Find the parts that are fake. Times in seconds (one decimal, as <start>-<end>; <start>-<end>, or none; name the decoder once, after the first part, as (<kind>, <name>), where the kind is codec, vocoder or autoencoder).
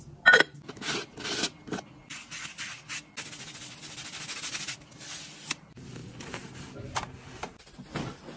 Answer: 6.0-6.5 (vocoder, BigVGAN v2)